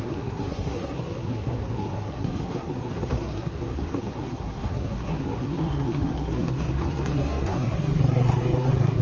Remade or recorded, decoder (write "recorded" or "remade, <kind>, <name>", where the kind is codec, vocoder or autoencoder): remade, codec, SNAC